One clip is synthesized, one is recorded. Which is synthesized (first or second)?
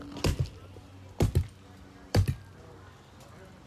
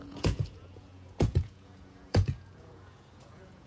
second